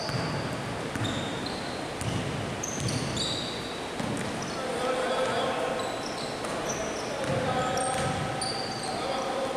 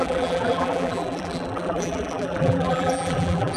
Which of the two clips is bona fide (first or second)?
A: first